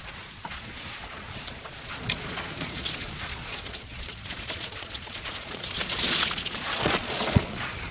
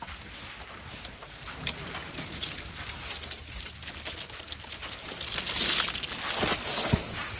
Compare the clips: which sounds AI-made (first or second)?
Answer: first